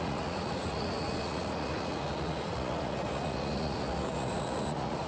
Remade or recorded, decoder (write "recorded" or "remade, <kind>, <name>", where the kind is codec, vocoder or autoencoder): remade, vocoder, Vocos